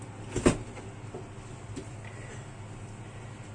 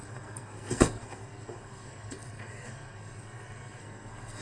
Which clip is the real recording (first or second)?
first